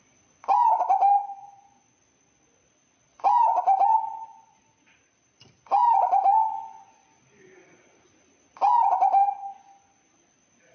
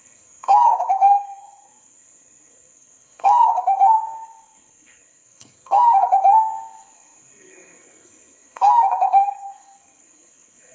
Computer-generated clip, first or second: second